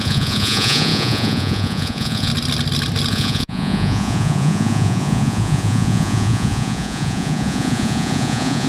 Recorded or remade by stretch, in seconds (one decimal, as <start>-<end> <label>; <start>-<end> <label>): 0.0-2.3 remade; 2.3-3.1 recorded; 3.1-8.7 remade